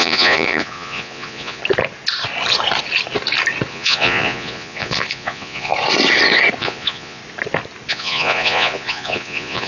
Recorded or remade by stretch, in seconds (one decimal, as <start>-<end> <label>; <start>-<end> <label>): 0.0-1.6 remade; 1.6-3.7 recorded; 3.7-5.7 remade; 5.7-6.6 recorded; 6.6-7.2 remade; 7.2-7.9 recorded; 7.9-9.7 remade